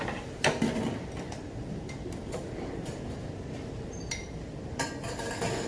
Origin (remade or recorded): recorded